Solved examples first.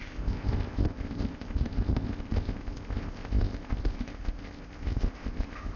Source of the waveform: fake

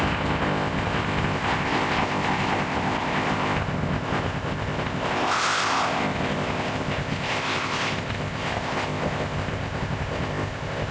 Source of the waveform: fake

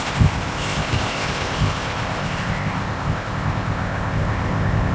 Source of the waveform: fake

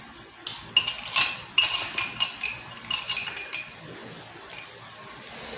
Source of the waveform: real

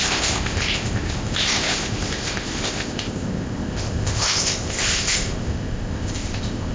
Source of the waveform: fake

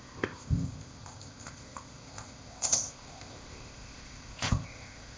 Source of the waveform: fake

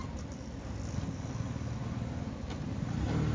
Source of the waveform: real